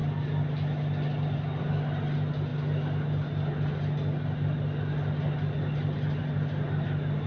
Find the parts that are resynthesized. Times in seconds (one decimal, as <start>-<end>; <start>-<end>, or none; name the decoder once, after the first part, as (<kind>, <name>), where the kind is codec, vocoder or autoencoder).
none